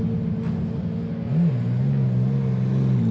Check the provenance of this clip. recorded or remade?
recorded